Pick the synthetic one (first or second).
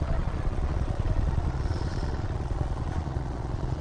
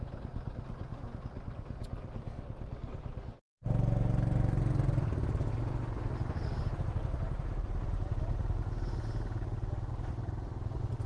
first